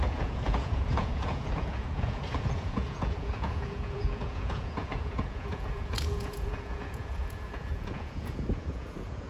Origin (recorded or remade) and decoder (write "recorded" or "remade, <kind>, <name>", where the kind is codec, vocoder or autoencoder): remade, vocoder, Vocos